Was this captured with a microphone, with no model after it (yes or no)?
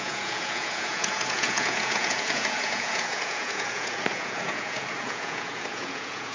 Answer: no